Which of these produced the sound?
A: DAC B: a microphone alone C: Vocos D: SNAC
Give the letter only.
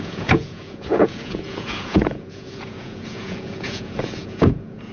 C